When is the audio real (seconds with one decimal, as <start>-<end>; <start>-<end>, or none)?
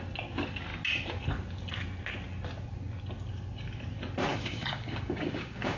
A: 0.0-4.3